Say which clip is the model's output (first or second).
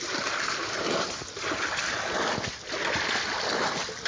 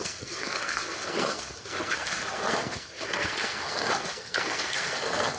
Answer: second